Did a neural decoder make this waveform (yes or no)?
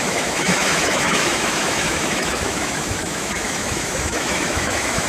yes